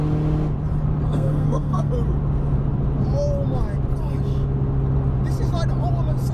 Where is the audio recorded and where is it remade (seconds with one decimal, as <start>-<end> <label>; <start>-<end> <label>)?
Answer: 0.0-1.1 recorded; 1.1-1.9 remade; 1.9-6.3 recorded